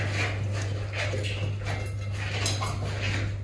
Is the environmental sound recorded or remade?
recorded